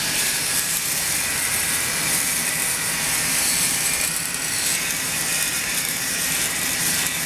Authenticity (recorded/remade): remade